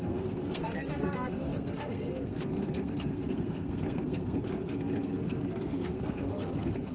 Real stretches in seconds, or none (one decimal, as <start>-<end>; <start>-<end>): none